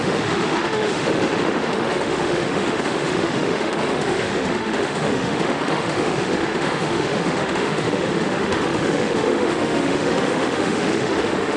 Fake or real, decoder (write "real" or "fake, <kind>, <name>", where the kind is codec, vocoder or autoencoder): fake, autoencoder, DAC-VAE